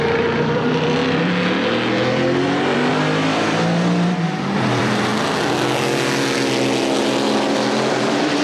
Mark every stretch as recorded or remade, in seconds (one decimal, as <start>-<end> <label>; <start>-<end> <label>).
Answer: 0.0-5.1 remade; 5.1-7.9 recorded; 7.9-8.4 remade